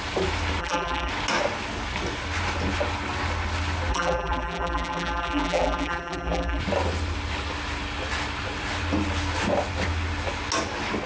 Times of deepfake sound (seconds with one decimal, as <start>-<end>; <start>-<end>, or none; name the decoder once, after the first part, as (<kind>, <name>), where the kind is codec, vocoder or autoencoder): 0.6-1.1 (vocoder, BigVGAN v2); 3.9-6.6